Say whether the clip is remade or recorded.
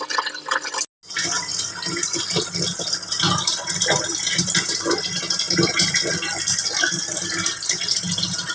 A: recorded